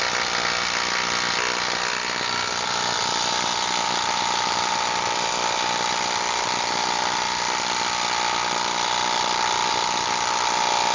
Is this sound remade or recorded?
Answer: remade